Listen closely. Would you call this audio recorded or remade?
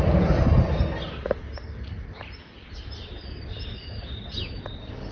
recorded